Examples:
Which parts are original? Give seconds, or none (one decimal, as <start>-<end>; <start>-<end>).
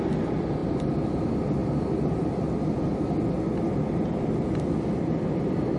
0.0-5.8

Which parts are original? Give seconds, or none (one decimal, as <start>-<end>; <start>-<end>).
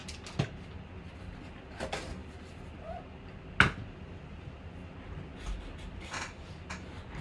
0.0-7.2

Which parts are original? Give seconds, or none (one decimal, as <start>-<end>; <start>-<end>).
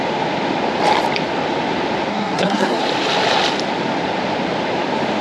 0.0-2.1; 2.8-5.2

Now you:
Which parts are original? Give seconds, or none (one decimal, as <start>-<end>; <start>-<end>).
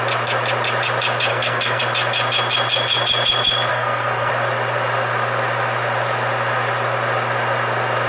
0.0-1.3; 1.8-3.7; 4.3-8.1